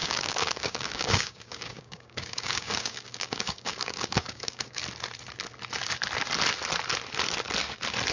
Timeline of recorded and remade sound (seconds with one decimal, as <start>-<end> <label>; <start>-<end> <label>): 0.0-4.8 remade; 4.8-8.1 recorded